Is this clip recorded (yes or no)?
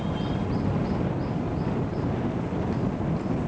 yes